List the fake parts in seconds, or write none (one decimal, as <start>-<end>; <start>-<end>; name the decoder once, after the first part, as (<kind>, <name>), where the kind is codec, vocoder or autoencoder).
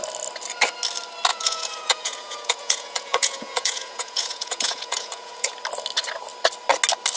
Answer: 1.3-5.5 (vocoder, Vocos)